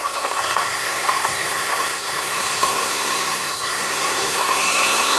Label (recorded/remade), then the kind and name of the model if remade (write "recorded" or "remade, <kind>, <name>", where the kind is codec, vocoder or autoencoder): remade, codec, SNAC